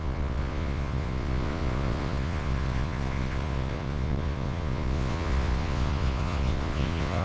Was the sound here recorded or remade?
remade